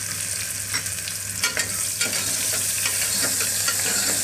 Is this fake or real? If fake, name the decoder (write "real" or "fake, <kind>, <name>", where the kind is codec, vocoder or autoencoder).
real